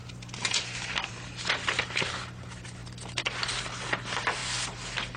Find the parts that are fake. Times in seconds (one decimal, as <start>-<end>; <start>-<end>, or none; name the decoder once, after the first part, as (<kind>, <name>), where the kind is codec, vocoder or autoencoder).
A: none